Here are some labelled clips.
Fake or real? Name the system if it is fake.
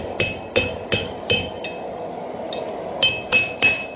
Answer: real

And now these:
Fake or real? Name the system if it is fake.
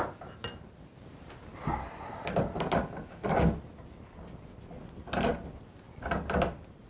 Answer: real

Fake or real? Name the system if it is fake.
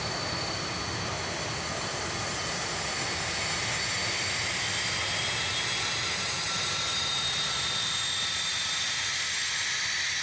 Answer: real